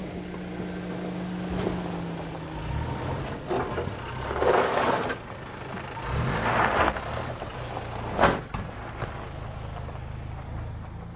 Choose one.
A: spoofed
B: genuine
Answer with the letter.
B